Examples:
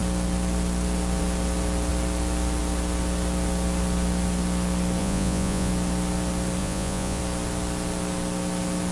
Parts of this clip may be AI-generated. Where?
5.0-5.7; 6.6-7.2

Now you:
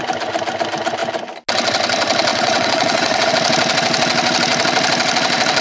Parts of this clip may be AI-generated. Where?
2.3-3.3

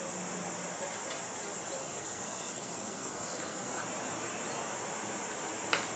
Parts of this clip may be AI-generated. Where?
1.8-3.8

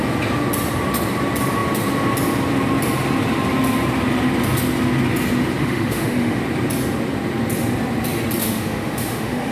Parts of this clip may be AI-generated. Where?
5.6-6.4; 8.4-9.5

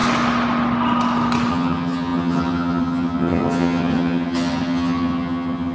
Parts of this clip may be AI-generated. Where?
1.5-5.7

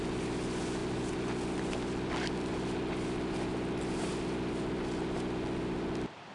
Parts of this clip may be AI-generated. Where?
none

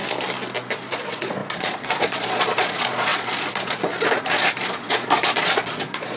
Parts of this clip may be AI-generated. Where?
0.7-6.2

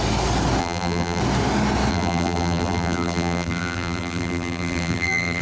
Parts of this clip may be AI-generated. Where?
0.6-1.2; 1.9-5.4